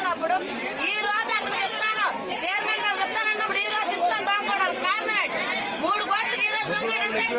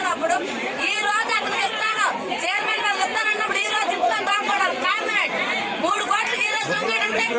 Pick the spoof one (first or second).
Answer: second